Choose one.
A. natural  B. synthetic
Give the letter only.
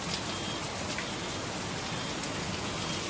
A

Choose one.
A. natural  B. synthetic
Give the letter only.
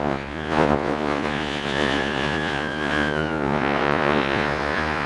B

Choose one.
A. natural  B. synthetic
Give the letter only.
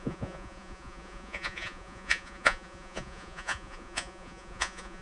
B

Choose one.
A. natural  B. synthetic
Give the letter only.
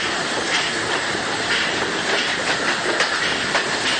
A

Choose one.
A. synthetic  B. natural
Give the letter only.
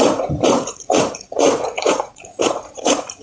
A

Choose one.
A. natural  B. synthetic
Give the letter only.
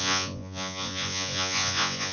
B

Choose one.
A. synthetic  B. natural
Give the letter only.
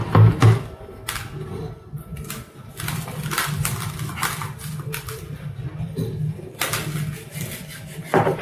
B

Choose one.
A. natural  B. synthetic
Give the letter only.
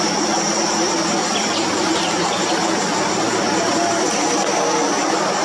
A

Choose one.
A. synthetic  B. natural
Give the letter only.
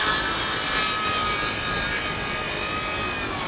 B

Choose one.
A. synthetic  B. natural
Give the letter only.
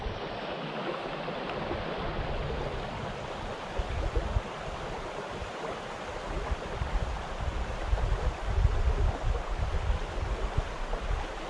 B